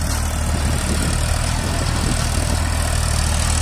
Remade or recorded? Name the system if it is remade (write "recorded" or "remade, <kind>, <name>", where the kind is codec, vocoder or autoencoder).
recorded